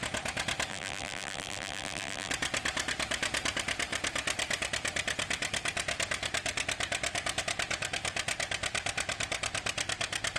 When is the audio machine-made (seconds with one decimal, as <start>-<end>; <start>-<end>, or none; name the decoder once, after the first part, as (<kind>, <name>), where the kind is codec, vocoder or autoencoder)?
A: 0.7-2.3 (vocoder, BigVGAN v2)